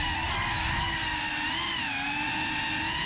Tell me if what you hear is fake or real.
real